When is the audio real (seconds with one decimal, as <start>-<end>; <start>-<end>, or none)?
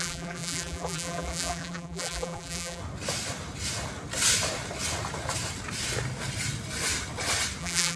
2.8-7.6